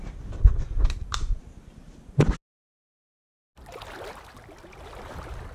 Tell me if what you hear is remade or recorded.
recorded